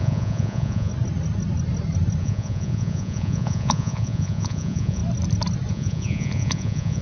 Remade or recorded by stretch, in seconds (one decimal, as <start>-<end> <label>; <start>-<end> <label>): 0.0-0.9 remade; 0.9-2.2 recorded; 2.2-5.0 remade; 5.0-5.7 recorded; 5.7-7.0 remade